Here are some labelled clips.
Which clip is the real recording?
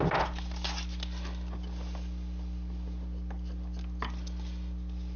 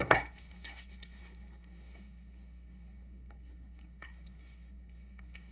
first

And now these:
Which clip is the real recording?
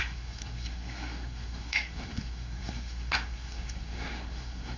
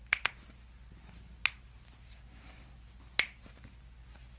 second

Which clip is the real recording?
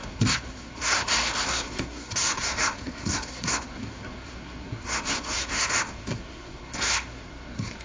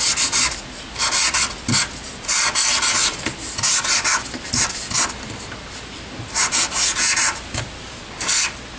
second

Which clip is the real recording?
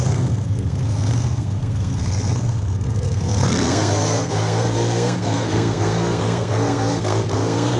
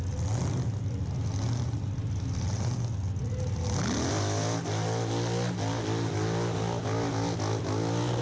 second